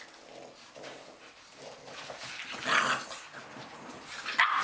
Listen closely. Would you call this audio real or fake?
real